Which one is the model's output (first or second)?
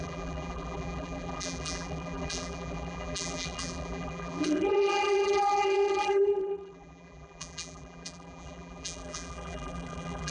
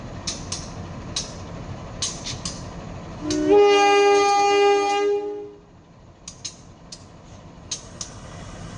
first